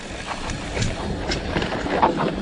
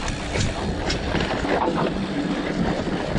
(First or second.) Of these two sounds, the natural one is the second